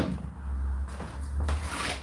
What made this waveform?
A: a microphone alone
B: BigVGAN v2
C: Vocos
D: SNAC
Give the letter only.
A